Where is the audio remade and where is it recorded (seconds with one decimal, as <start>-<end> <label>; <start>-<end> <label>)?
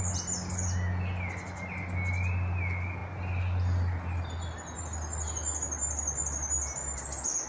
0.0-7.5 recorded